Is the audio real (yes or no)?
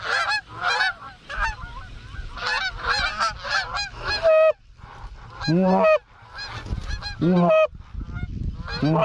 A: yes